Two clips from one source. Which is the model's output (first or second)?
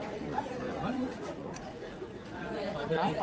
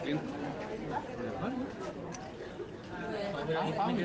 first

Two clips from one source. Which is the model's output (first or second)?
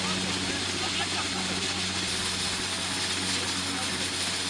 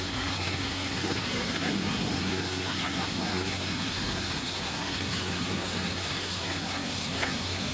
second